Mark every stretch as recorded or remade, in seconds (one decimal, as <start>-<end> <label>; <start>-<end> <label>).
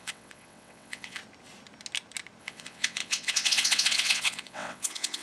0.0-1.2 remade; 1.2-2.4 recorded; 2.4-5.2 remade